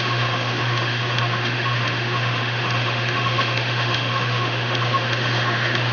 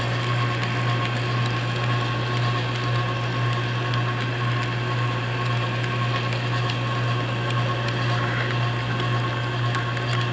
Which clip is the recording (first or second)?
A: second